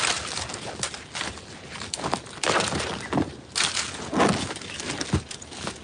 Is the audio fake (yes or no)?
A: no